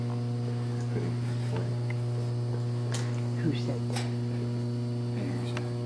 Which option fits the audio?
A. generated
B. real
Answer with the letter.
B